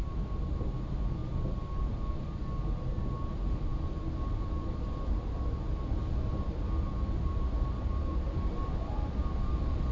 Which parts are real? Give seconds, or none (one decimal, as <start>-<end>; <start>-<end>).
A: 1.2-1.8

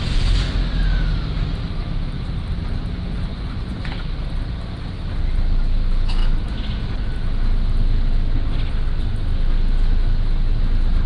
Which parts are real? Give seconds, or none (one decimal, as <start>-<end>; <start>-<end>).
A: 0.0-3.3; 3.9-11.1

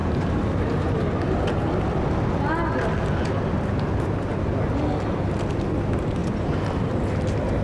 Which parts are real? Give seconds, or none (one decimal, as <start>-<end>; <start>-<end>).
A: 1.2-6.2; 7.0-7.6

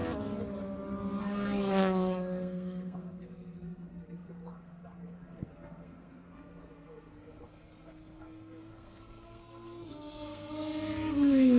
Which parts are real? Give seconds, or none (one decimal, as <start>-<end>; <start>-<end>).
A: 0.0-1.2